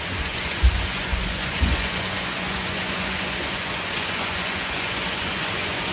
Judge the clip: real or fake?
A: fake